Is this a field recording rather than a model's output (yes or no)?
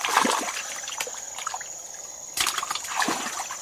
yes